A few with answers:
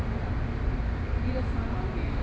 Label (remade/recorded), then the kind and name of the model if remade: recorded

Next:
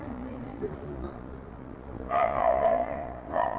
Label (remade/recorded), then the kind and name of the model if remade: remade, vocoder, Vocos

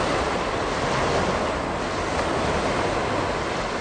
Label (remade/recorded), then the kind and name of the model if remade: recorded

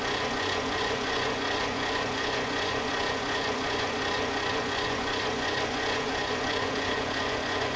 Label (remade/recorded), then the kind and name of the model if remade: remade, vocoder, Vocos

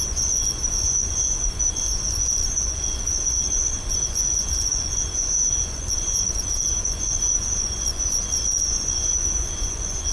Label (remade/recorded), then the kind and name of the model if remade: remade, vocoder, Vocos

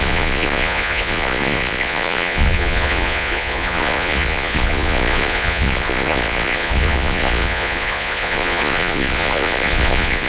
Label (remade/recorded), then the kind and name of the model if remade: remade, vocoder, Vocos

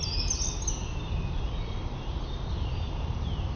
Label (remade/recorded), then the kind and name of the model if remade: recorded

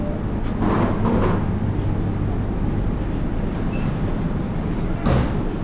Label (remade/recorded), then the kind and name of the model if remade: recorded